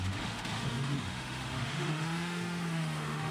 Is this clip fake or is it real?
fake